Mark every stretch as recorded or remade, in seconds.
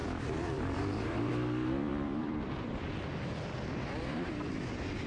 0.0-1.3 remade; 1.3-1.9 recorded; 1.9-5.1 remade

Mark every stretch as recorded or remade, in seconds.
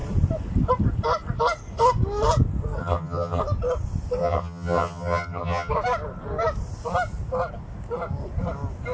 0.0-2.8 recorded; 2.8-3.4 remade; 3.4-4.2 recorded; 4.2-5.7 remade; 5.7-8.9 recorded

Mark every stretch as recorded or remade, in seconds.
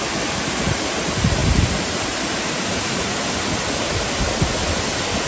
0.0-5.3 recorded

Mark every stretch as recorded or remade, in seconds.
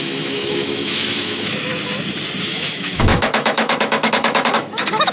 0.0-1.7 remade; 1.7-2.4 recorded; 2.4-5.1 remade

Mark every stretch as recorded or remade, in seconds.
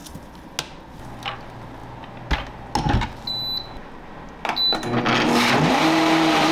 0.0-6.5 recorded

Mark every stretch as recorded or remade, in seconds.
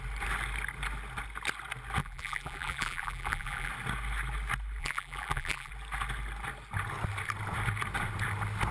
0.0-2.0 recorded; 2.0-3.7 remade; 3.7-4.8 recorded; 4.8-5.7 remade; 5.7-8.7 recorded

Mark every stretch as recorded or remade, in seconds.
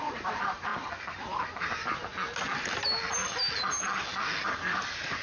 0.0-0.7 remade; 0.7-1.6 recorded; 1.6-2.1 remade; 2.1-4.4 recorded; 4.4-5.2 remade